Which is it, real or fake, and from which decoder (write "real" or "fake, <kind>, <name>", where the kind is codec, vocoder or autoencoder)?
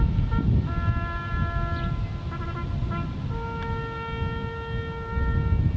real